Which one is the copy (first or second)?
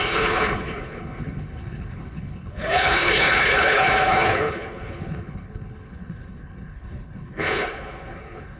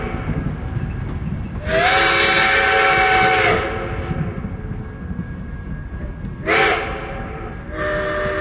first